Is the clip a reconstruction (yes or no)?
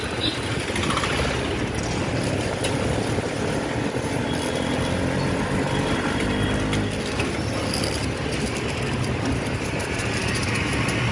no